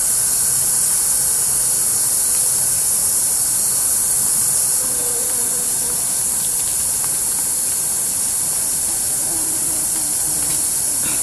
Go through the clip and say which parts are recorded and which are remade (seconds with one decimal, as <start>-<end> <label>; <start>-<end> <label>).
0.0-9.2 recorded; 9.2-10.5 remade; 10.5-11.2 recorded